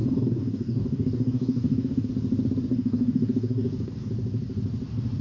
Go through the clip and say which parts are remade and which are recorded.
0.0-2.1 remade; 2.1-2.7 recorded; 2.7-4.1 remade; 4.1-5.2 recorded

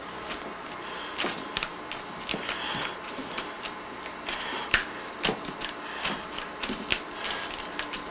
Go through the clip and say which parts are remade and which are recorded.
0.0-0.7 remade; 0.7-8.1 recorded

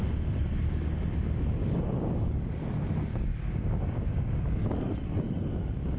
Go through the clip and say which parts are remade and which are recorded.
0.0-1.6 recorded; 1.6-2.3 remade; 2.3-3.1 recorded; 3.1-4.6 remade; 4.6-6.0 recorded